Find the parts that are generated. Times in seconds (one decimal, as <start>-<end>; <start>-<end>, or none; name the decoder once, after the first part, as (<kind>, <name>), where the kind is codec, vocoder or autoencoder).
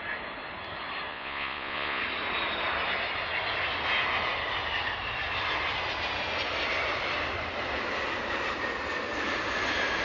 1.1-2.0 (vocoder, Vocos)